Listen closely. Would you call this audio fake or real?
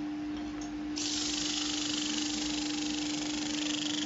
real